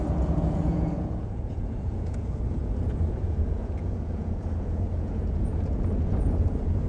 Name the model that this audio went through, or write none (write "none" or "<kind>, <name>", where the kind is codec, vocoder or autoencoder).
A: vocoder, Vocos